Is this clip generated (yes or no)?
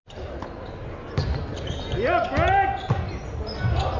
no